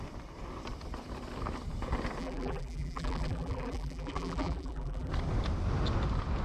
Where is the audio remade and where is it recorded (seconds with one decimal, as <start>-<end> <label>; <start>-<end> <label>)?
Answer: 0.0-2.2 recorded; 2.2-5.1 remade; 5.1-6.4 recorded